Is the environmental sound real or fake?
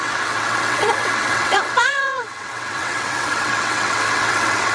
fake